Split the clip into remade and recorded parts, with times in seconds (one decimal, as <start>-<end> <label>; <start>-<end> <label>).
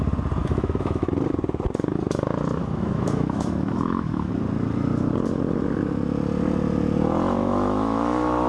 0.0-0.4 recorded; 0.4-1.1 remade; 1.1-2.6 recorded; 2.6-4.3 remade; 4.3-7.4 recorded; 7.4-8.5 remade